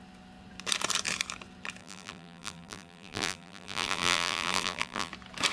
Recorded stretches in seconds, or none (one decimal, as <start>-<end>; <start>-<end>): 0.0-1.8; 5.1-5.5